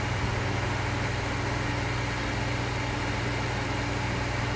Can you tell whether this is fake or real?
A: real